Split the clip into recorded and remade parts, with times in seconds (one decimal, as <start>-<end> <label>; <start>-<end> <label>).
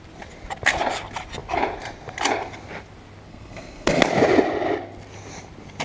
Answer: 0.0-3.3 recorded; 3.3-4.0 remade; 4.0-5.8 recorded